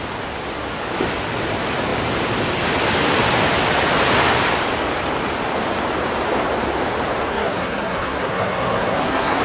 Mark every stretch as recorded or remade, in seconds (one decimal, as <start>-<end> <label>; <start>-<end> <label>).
0.0-7.3 recorded; 7.3-9.4 remade